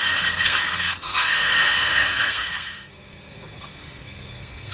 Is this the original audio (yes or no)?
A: no